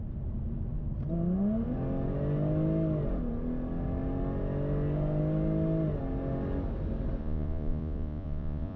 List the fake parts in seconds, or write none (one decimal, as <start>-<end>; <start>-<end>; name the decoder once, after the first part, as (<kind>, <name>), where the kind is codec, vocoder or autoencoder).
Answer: 7.2-8.8 (vocoder, Vocos)